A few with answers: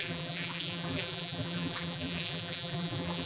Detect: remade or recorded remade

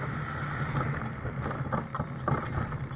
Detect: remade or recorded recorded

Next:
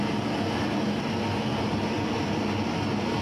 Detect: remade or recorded recorded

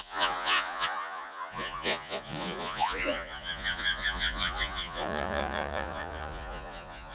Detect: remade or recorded remade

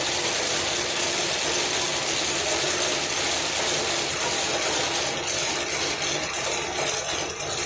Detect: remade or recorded recorded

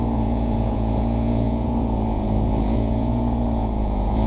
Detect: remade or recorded remade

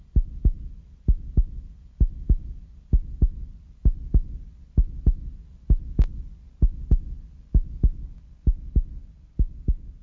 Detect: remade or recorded recorded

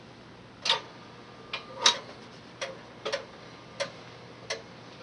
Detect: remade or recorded recorded